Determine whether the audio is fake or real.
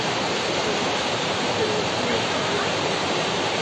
fake